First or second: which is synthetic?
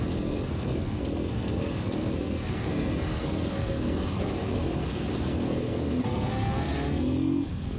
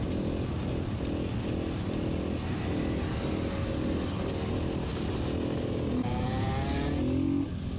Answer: first